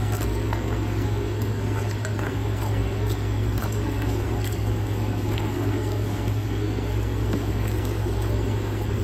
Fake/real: fake